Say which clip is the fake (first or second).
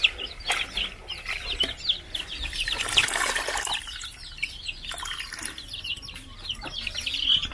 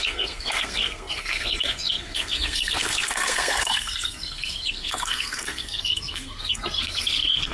second